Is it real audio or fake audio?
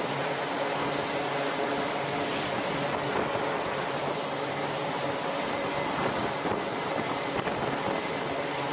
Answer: real